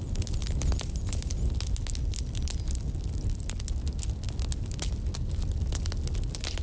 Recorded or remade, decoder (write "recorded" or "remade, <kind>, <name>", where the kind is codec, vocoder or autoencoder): recorded